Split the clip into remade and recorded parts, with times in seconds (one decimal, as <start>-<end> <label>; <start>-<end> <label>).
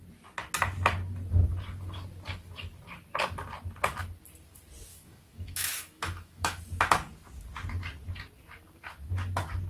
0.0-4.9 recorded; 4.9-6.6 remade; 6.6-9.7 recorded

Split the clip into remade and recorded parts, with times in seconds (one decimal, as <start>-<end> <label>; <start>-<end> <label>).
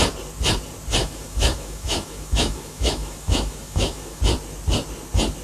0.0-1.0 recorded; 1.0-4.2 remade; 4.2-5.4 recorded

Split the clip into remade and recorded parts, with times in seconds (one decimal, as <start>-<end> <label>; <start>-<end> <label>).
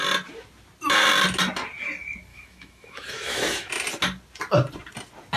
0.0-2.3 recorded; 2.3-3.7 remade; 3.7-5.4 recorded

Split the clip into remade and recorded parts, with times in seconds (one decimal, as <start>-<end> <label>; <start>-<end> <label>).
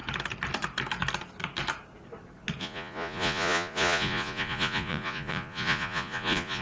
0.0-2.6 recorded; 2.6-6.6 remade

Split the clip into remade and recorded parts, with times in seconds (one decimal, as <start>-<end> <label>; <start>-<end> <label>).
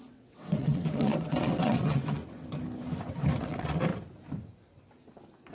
0.0-2.2 remade; 2.2-3.4 recorded; 3.4-3.9 remade; 3.9-5.5 recorded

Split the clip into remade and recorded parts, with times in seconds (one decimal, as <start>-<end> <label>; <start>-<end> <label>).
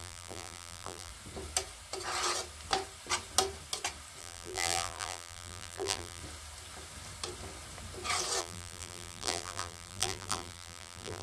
0.0-1.1 remade; 1.1-4.2 recorded; 4.2-6.2 remade; 6.2-8.4 recorded; 8.4-11.2 remade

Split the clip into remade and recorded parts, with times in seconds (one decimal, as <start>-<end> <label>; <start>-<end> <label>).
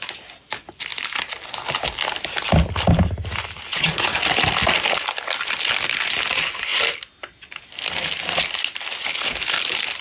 0.0-3.7 recorded; 3.7-4.2 remade; 4.2-10.0 recorded